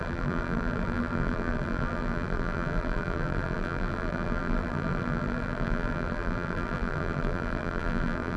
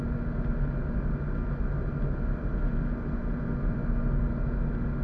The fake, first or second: first